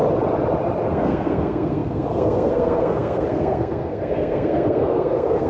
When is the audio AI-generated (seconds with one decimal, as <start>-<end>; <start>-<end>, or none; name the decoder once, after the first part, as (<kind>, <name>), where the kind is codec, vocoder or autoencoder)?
0.9-5.5 (codec, SNAC)